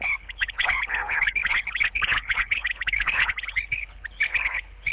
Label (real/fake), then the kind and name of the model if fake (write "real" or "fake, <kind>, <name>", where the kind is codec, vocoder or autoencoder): fake, codec, HILCodec